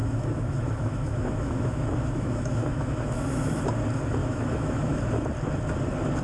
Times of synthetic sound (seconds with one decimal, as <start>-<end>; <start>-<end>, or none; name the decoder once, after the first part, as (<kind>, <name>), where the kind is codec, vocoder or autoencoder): 0.0-3.7 (autoencoder, DAC-VAE); 4.2-5.0